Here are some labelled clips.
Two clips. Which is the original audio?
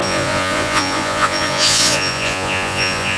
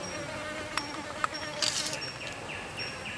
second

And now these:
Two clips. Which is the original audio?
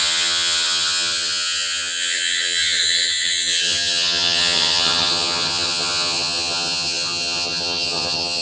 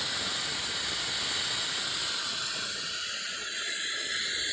second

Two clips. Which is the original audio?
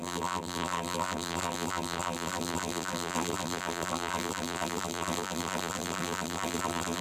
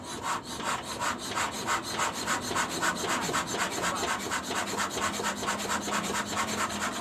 second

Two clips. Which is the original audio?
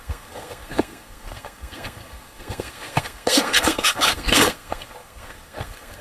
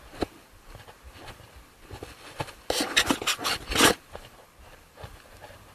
second